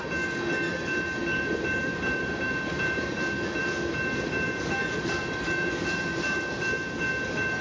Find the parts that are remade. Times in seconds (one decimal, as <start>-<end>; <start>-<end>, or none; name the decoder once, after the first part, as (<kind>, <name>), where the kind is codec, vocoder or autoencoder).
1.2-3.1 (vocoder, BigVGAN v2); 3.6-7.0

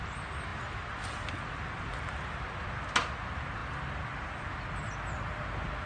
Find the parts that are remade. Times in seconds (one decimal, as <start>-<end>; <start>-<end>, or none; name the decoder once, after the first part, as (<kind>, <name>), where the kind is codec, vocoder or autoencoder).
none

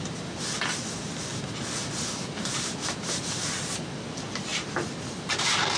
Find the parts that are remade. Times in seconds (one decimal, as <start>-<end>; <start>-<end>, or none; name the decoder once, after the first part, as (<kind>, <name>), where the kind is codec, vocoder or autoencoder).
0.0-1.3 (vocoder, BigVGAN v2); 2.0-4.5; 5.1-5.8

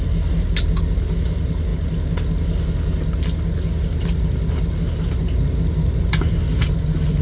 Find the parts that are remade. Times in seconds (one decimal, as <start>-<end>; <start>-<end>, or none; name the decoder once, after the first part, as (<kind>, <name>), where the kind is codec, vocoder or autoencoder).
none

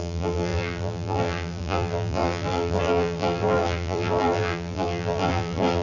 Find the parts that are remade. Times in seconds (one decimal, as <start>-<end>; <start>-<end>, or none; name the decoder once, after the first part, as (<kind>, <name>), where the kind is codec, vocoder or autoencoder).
0.0-5.8 (vocoder, BigVGAN v2)

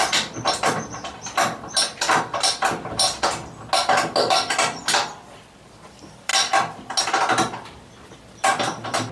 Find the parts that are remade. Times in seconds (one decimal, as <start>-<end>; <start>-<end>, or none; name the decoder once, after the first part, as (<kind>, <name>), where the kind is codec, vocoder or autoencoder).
2.0-3.4 (vocoder, BigVGAN v2); 5.8-6.3; 7.0-9.1

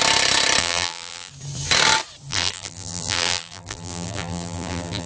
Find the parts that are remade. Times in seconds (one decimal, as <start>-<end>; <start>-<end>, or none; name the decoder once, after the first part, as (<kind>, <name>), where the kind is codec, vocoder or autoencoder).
0.6-1.3 (vocoder, BigVGAN v2); 2.3-5.1